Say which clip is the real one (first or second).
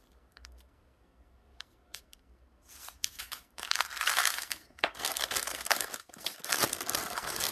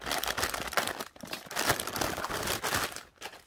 second